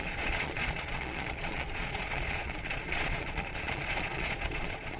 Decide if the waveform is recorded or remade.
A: remade